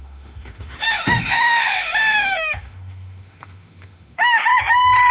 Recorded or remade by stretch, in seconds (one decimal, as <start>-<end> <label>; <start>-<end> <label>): 0.0-4.5 remade; 4.5-5.1 recorded